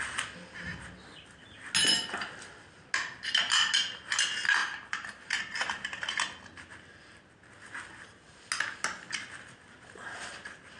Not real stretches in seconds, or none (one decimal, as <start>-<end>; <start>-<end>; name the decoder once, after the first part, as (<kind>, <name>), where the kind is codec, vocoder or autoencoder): 4.6-5.4 (vocoder, BigVGAN v2)